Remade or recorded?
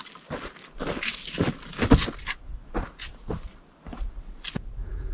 recorded